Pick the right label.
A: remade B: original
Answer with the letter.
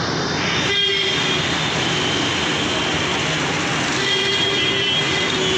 B